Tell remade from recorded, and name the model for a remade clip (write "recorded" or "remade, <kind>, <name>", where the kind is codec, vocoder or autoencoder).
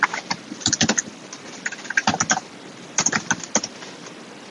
recorded